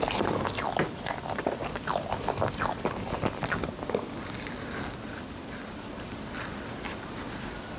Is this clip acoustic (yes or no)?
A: no